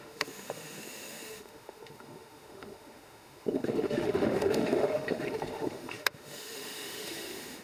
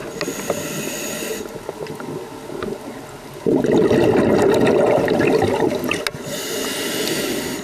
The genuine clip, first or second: second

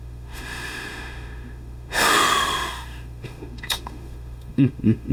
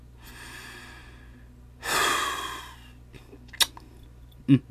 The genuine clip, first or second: second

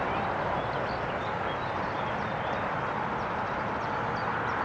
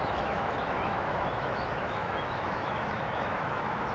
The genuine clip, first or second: first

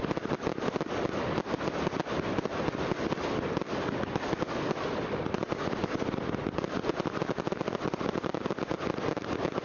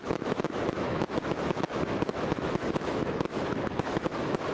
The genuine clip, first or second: first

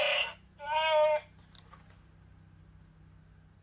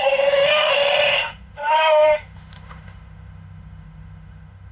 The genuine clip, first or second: first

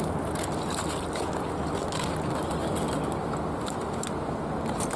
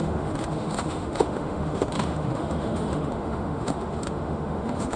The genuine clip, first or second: first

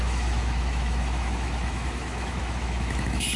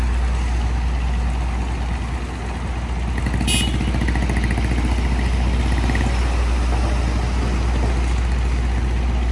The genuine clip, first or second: second